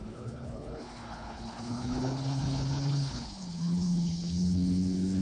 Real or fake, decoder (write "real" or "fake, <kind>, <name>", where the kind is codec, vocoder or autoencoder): fake, codec, HILCodec